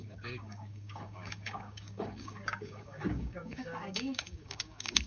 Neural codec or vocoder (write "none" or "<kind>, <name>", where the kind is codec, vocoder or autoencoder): codec, DAC